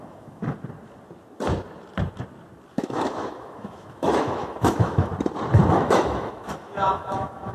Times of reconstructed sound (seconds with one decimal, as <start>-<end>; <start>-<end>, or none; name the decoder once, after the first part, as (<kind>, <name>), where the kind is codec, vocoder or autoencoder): 0.0-0.4 (autoencoder, DAC-VAE); 2.7-5.1; 5.7-7.5